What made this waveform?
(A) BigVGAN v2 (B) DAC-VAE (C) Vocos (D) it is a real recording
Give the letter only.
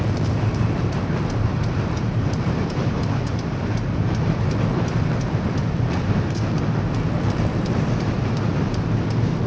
A